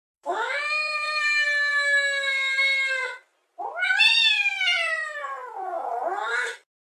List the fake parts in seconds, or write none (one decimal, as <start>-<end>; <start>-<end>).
0.0-1.2